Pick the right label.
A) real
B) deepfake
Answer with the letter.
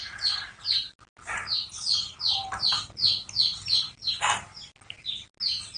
A